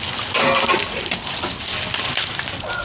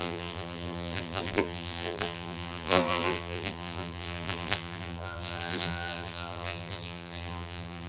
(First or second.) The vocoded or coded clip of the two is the second